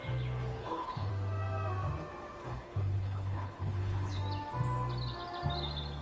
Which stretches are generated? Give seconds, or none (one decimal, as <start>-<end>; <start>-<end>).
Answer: 0.6-1.1; 2.4-4.2